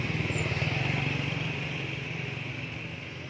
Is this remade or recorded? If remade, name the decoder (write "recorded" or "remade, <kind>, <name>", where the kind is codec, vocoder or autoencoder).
recorded